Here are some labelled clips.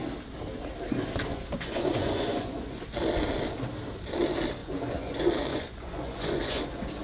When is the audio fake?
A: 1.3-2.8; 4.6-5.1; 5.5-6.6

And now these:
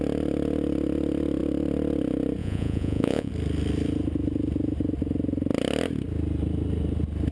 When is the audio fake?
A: 2.4-3.3

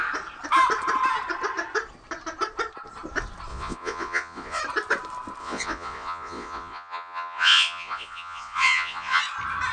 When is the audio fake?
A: 3.5-4.6; 5.4-9.2

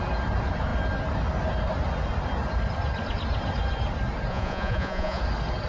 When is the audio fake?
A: 4.3-5.2

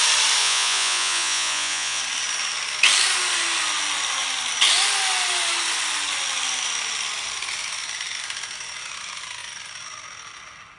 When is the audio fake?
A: 0.4-2.0

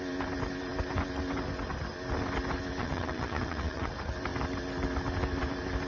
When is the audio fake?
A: 2.8-3.9

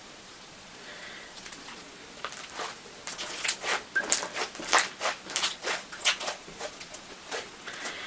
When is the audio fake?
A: 0.0-2.0; 3.1-3.7; 5.4-8.1

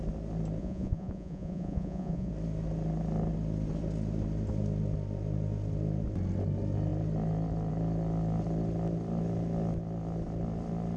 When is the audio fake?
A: 0.6-2.3